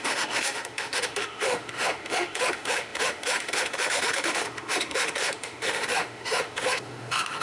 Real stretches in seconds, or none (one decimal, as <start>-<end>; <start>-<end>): none